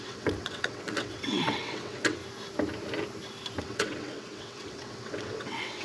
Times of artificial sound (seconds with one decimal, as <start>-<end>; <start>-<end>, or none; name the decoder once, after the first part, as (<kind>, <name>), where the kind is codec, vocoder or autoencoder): 0.0-2.2 (vocoder, WaveNeXt); 3.6-5.8